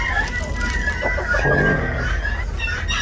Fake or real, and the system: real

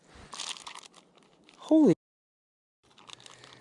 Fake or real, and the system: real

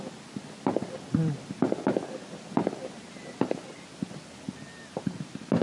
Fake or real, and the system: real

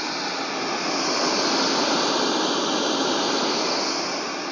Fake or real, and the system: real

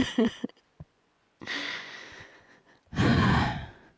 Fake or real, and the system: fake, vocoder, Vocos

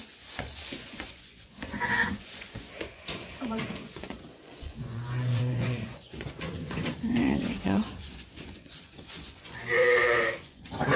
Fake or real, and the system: fake, vocoder, Vocos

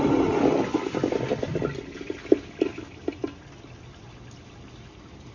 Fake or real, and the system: real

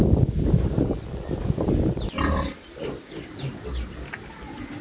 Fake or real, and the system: real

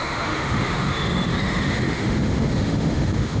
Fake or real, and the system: fake, autoencoder, DAC-VAE